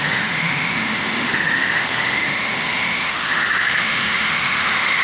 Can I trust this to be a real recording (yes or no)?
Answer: no